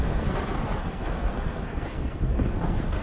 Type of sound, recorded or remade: remade